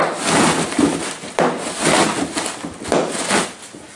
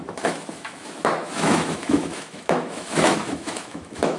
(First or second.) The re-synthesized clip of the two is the second